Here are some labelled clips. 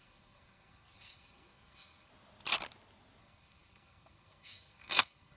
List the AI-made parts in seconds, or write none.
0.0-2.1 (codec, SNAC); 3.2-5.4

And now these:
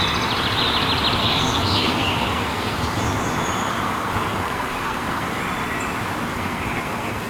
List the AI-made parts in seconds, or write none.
1.2-3.0 (codec, SNAC); 3.7-5.4; 6.3-7.3

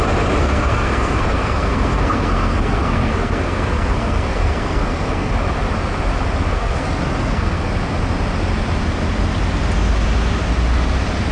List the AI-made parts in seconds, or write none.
0.4-5.3 (codec, SNAC); 6.5-7.7